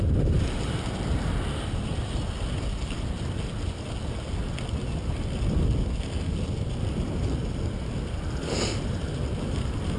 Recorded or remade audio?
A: recorded